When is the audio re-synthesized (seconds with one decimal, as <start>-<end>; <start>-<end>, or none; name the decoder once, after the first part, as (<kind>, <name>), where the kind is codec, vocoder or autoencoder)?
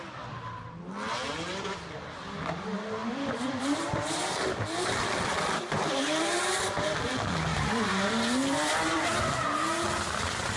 3.0-6.3 (vocoder, BigVGAN v2); 7.5-8.1